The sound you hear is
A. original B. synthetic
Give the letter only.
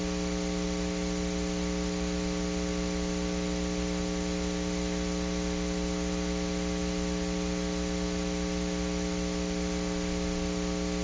A